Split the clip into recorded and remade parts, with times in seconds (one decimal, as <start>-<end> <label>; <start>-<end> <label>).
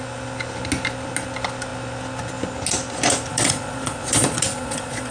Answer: 0.0-3.3 recorded; 3.3-5.1 remade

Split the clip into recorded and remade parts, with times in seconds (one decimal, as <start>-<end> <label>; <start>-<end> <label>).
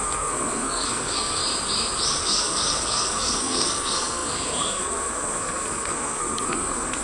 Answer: 0.0-1.4 remade; 1.4-2.2 recorded; 2.2-7.0 remade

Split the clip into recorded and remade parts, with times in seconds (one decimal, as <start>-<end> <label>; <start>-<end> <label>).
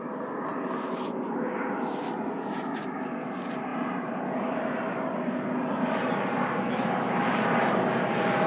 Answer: 0.0-8.5 recorded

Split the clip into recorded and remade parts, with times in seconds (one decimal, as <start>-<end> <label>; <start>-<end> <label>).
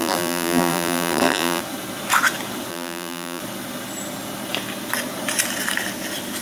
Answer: 0.0-1.6 remade; 1.6-2.7 recorded; 2.7-3.4 remade; 3.4-6.4 recorded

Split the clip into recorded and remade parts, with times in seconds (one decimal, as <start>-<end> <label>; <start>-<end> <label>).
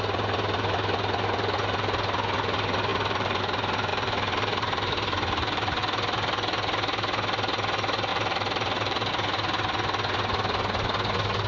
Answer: 0.0-2.9 recorded; 2.9-3.4 remade; 3.4-3.9 recorded; 3.9-5.8 remade; 5.8-8.1 recorded; 8.1-9.1 remade; 9.1-11.5 recorded